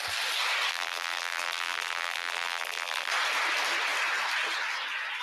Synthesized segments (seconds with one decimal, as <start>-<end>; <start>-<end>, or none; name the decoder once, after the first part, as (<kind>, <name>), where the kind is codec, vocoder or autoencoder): 0.7-3.1 (vocoder, BigVGAN v2)